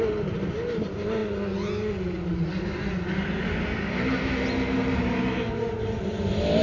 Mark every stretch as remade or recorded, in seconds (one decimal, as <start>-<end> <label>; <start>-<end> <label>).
0.0-6.6 recorded